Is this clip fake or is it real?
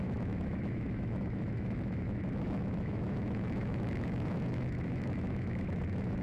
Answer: fake